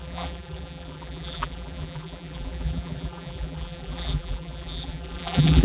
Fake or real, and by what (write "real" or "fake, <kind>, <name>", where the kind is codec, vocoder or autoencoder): fake, vocoder, BigVGAN v2